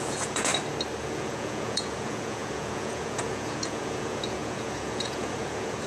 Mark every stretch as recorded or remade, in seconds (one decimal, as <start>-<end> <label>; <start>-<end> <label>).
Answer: 0.0-0.5 remade; 0.5-1.0 recorded; 1.0-5.9 remade